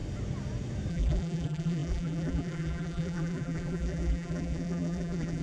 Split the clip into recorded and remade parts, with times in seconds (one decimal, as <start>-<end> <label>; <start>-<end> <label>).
0.0-0.9 recorded; 0.9-5.4 remade